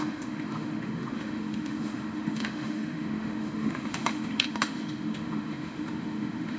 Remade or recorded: remade